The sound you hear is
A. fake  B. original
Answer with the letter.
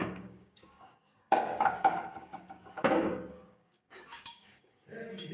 A